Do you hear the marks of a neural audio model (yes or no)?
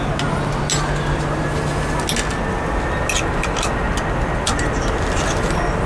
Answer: no